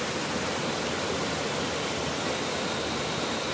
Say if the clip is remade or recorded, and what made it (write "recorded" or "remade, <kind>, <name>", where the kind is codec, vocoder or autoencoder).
recorded